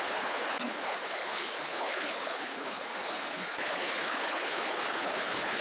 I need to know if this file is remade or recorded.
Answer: remade